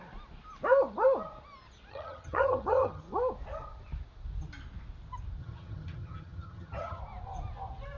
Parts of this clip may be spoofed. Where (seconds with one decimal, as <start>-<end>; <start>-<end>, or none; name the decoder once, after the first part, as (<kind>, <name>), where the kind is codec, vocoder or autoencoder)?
1.9-3.0 (vocoder, HiFi-GAN); 5.4-7.0